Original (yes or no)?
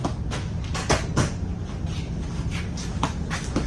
yes